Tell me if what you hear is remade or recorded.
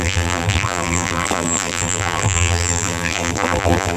remade